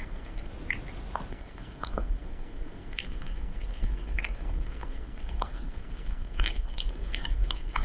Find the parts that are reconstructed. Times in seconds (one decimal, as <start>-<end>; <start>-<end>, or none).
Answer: 0.0-0.5; 1.3-7.8